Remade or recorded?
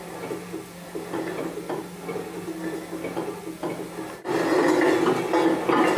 recorded